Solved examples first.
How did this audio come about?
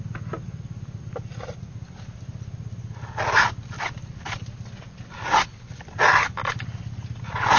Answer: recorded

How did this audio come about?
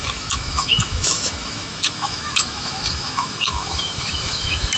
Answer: remade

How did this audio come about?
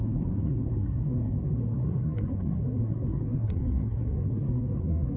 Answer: remade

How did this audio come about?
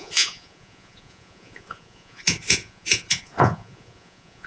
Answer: remade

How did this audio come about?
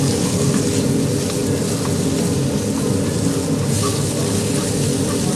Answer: recorded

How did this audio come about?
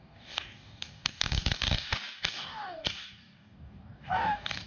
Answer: remade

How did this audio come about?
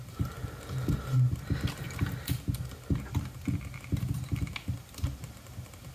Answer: recorded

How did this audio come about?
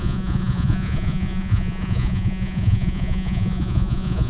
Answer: remade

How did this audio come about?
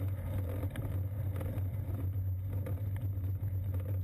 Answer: recorded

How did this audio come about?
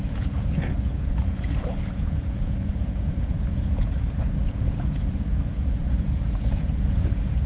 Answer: remade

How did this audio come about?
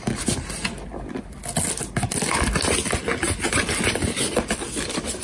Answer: recorded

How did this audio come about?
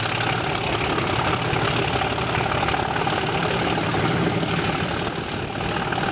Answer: recorded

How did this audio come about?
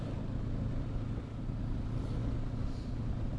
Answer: recorded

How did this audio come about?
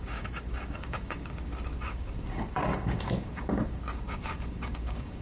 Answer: remade